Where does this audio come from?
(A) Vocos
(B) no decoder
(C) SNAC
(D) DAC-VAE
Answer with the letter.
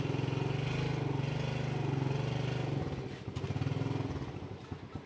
B